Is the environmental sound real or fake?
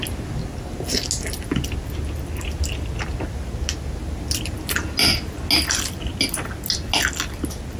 real